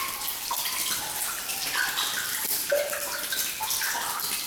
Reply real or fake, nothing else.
real